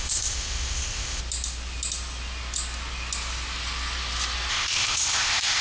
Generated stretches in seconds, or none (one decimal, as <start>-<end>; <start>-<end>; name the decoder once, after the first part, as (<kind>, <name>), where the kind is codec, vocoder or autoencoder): 0.0-1.2 (codec, ZipCodec); 4.5-5.6